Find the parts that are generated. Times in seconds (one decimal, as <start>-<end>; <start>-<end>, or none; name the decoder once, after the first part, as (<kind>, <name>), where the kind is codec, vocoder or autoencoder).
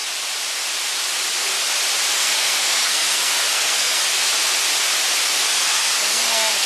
2.1-4.3 (codec, SNAC); 5.3-6.7